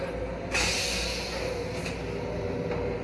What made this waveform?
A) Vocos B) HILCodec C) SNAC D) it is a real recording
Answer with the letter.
D